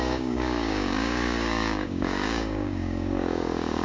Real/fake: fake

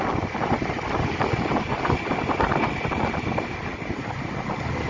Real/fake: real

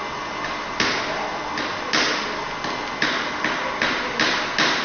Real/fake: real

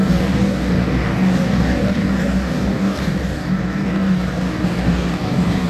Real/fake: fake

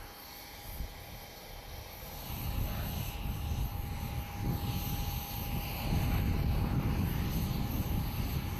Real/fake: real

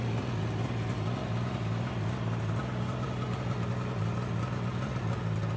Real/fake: real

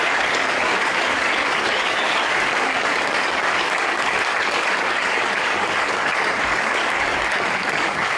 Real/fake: fake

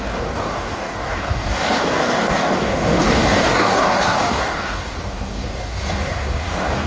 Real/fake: fake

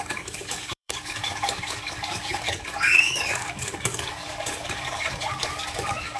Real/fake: fake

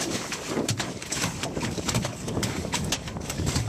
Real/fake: fake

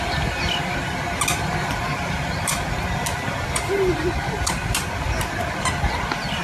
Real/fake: real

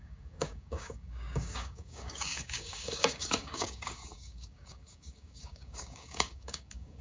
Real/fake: fake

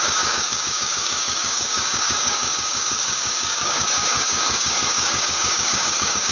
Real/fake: fake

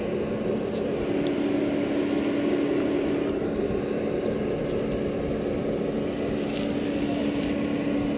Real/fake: real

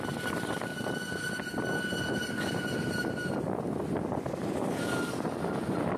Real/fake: real